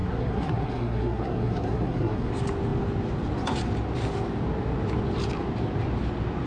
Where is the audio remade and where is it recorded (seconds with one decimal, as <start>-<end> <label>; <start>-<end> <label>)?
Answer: 0.0-2.3 remade; 2.3-6.5 recorded